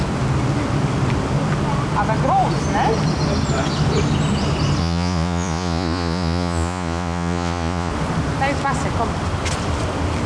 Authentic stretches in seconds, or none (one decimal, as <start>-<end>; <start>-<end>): 0.0-4.8; 7.9-10.3